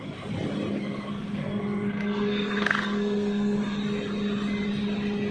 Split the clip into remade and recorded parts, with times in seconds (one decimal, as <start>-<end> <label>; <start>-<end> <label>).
0.0-0.8 recorded; 0.8-3.6 remade; 3.6-5.3 recorded